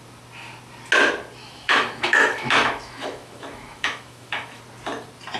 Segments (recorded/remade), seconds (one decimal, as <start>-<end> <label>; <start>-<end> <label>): 0.0-1.4 recorded; 1.4-4.6 remade; 4.6-5.4 recorded